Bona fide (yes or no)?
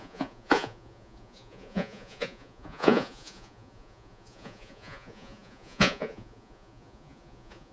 no